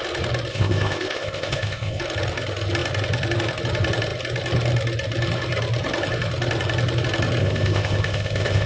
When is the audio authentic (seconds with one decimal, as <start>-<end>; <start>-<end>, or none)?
0.0-0.5; 2.0-7.4